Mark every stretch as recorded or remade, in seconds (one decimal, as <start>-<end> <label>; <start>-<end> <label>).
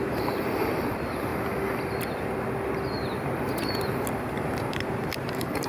0.0-1.3 remade; 1.3-4.3 recorded; 4.3-5.7 remade